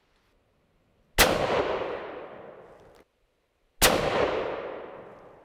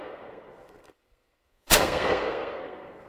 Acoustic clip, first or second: first